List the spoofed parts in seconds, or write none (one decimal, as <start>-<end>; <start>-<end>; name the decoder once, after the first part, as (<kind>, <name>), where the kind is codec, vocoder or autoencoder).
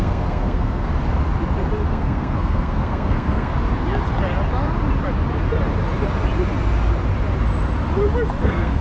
0.0-0.9 (codec, SNAC); 1.9-3.5; 8.4-8.8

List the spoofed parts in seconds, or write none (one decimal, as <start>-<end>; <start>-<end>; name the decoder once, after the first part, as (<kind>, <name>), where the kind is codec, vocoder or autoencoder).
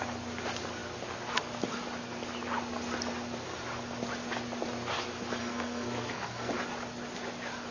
5.4-6.5 (codec, SNAC)